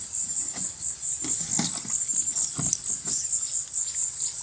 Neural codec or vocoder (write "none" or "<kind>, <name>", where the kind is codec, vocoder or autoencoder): none